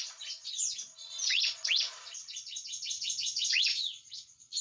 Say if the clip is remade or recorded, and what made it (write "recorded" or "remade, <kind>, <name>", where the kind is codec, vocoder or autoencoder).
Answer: remade, vocoder, Vocos